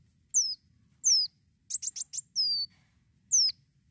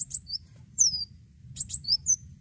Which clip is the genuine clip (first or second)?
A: first